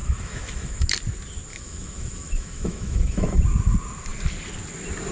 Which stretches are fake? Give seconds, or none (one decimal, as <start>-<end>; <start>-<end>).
0.0-0.9; 1.5-3.4

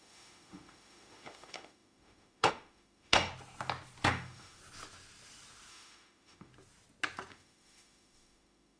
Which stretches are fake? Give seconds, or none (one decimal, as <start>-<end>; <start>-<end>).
0.0-3.3; 4.1-4.6; 5.7-6.5; 7.3-8.8

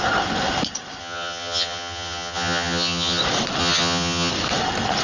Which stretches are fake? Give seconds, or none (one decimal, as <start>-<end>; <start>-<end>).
1.0-3.2; 3.6-4.3

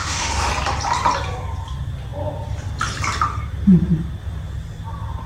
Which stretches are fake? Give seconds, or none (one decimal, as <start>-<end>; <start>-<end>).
0.0-0.5